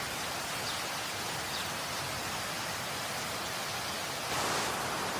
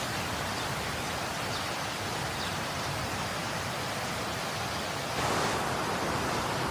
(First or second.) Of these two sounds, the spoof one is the second